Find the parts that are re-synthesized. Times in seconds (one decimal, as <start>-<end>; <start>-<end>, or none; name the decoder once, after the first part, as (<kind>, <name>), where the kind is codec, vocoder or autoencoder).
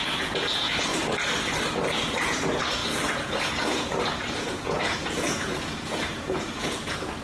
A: 0.0-0.9 (vocoder, Vocos); 2.2-7.2